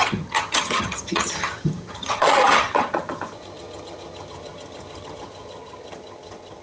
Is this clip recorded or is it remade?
remade